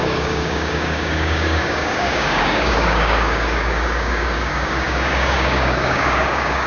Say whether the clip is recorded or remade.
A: remade